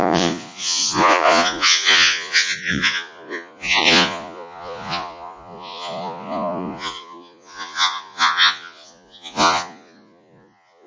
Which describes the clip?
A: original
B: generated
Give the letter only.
B